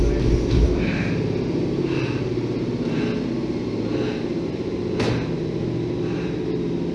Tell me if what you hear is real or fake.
real